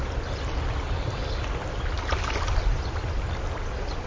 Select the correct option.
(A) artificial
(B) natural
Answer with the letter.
B